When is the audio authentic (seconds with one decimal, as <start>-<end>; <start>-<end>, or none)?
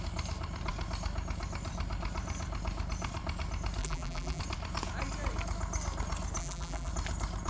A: 0.0-3.8; 4.4-6.4; 6.9-7.5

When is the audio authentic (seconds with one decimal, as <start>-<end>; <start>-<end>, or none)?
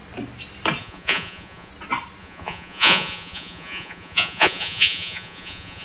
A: 0.0-0.8; 1.7-2.2